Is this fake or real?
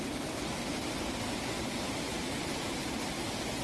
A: real